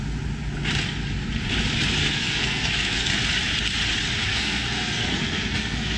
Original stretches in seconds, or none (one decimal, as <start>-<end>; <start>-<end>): 0.0-2.0; 3.2-4.3